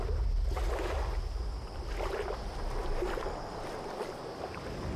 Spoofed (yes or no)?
no